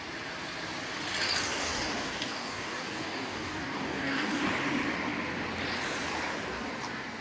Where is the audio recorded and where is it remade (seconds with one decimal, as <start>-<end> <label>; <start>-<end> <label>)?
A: 0.0-1.5 recorded; 1.5-4.4 remade; 4.4-7.2 recorded